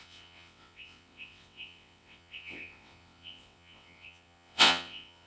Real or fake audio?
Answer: fake